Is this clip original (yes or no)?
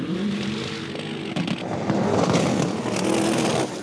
yes